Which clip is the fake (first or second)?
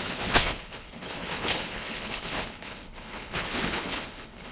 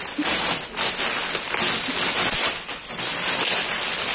first